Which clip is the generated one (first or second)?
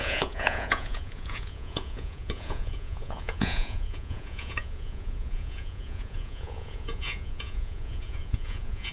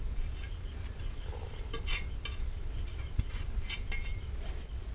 first